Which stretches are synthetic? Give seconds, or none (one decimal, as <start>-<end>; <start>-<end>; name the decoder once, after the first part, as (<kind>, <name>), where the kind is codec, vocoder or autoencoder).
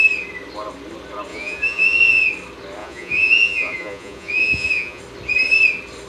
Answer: 1.3-2.2 (vocoder, Vocos); 2.8-5.0